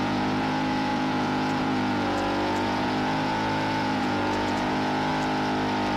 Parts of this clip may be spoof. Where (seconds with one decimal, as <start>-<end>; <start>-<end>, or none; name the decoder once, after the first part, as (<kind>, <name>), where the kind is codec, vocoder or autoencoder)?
0.0-5.1 (vocoder, Vocos)